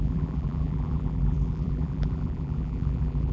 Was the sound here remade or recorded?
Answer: remade